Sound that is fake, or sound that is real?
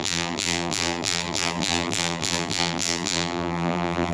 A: fake